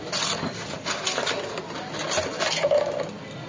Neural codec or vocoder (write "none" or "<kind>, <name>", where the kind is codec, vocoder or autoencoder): none